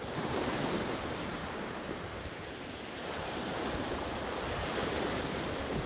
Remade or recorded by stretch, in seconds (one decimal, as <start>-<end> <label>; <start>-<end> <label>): 0.0-5.9 remade